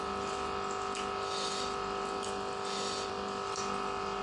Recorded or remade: recorded